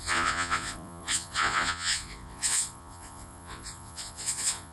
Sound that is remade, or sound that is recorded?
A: remade